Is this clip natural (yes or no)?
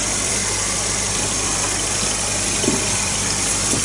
no